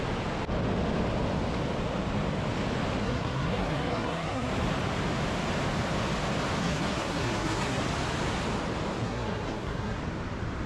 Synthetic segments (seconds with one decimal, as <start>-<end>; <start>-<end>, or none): 3.0-4.5; 6.6-7.8; 9.0-10.0

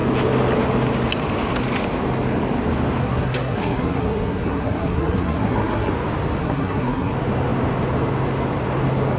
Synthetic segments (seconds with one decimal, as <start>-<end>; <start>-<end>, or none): 3.0-5.9; 6.4-7.1

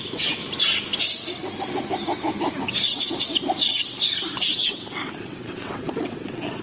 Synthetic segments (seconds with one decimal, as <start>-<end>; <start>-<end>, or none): 0.0-0.4; 4.4-6.6

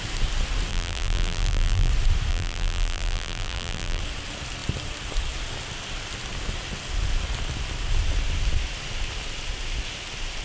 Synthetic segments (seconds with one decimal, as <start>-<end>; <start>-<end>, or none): 0.7-1.9; 2.3-4.0

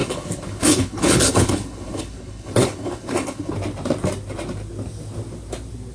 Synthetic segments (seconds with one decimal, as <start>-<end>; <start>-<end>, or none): 0.0-3.5

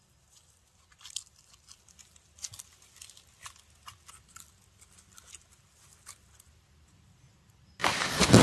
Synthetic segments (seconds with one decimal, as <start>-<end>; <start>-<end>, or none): none

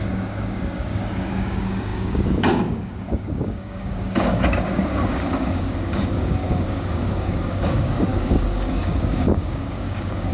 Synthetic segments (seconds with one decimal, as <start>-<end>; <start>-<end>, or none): 0.0-10.3